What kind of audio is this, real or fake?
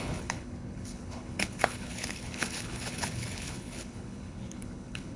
fake